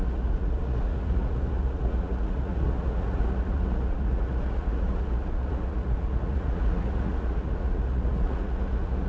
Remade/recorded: remade